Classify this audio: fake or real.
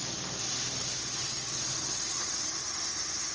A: real